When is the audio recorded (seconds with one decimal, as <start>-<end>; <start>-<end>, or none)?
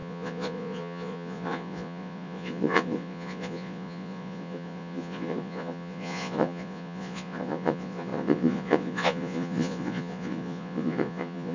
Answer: none